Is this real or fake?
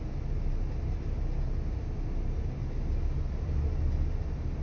real